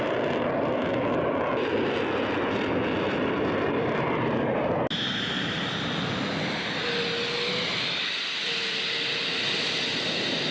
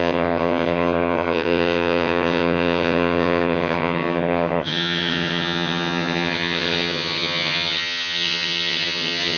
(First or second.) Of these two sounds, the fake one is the second